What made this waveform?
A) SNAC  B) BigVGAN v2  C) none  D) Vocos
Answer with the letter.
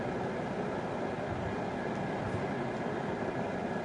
C